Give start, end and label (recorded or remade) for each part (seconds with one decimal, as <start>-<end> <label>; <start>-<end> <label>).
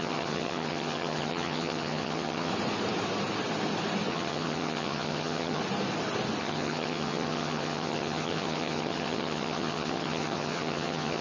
0.0-2.5 remade; 2.5-4.1 recorded; 4.1-5.6 remade; 5.6-6.4 recorded; 6.4-11.2 remade